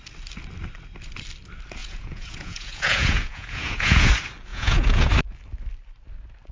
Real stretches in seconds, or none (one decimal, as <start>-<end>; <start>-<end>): 0.0-1.8; 4.1-4.5; 5.1-6.5